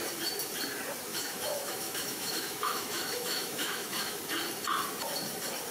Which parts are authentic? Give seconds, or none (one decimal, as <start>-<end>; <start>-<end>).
0.0-1.1; 4.2-5.7